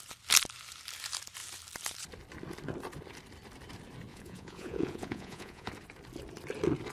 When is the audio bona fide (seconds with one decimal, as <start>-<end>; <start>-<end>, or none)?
0.0-4.1; 5.7-6.9